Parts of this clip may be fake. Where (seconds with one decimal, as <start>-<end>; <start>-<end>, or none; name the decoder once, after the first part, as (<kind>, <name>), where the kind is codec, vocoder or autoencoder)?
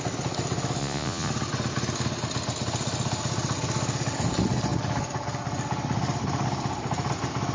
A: 0.8-1.3 (vocoder, Vocos)